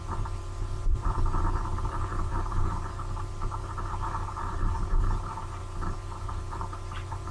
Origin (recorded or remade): remade